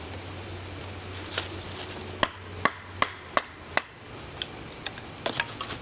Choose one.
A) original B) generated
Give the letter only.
A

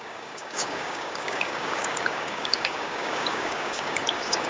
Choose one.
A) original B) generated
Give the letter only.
B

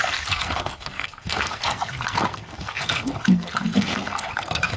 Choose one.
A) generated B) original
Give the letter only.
A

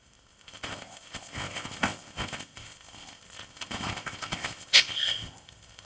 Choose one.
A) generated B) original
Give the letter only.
A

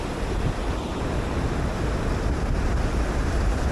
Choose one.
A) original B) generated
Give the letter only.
A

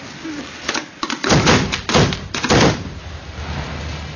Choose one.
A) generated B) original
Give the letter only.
B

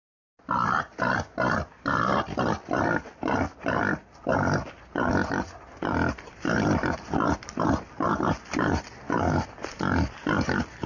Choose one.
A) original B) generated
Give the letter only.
A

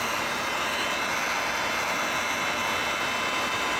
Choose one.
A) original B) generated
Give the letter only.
A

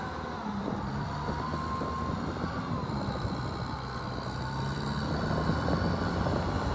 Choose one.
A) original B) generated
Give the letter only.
A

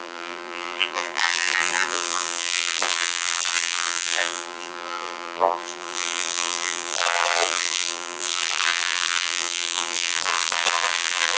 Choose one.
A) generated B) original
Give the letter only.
A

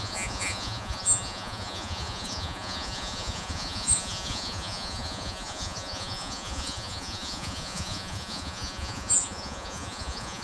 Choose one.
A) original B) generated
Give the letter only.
B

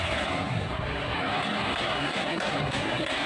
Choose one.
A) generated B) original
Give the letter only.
A